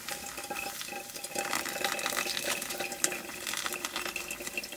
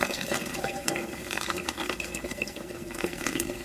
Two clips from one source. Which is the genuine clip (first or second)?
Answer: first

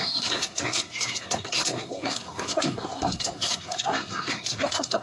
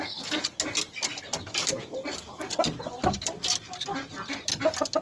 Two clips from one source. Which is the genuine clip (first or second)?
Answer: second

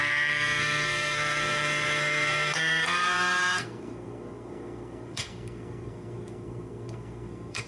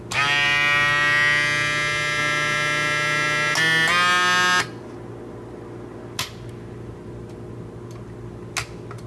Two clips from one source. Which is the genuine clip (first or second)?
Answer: second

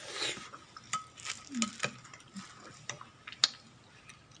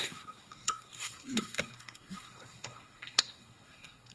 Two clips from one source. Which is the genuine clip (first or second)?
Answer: first